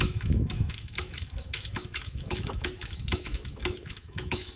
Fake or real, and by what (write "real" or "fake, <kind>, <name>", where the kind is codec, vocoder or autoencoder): fake, autoencoder, DAC-VAE